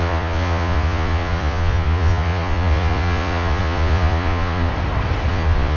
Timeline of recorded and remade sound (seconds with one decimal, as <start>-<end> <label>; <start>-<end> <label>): 0.0-4.7 remade; 4.7-5.3 recorded; 5.3-5.8 remade